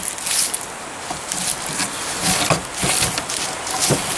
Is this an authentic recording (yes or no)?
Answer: yes